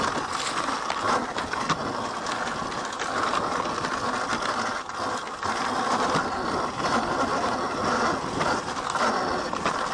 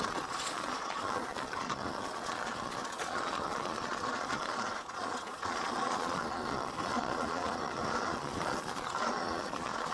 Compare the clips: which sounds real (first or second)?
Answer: first